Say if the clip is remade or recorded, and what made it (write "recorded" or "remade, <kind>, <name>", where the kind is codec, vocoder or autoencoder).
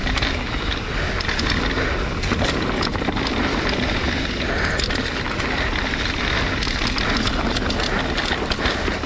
recorded